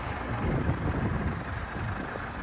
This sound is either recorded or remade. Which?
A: remade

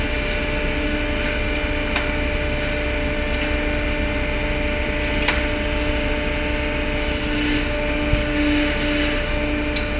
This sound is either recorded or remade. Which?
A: recorded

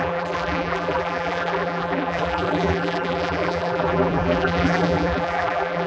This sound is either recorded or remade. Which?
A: remade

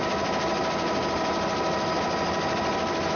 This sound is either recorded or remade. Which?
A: recorded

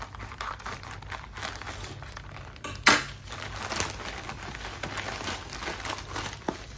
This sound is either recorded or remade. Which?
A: recorded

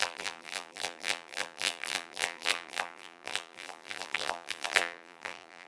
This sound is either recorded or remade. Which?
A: remade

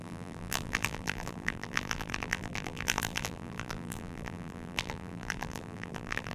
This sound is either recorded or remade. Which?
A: remade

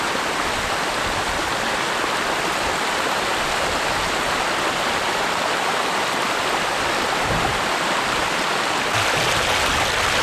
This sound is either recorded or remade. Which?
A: recorded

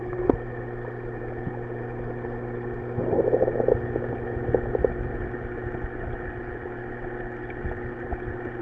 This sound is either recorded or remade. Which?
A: recorded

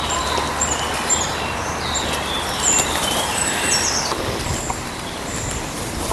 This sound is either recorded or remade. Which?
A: remade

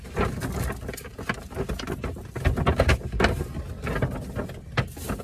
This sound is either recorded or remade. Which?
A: recorded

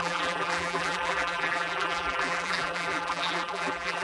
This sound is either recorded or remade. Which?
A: remade